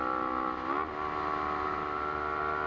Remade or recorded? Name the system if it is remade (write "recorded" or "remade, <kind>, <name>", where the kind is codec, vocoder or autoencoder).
recorded